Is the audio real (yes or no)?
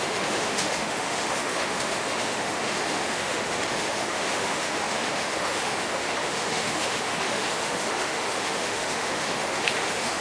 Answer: no